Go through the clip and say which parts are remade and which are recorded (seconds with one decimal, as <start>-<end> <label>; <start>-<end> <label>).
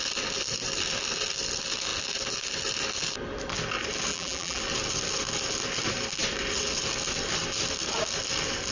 0.0-4.1 recorded; 4.1-4.6 remade; 4.6-8.7 recorded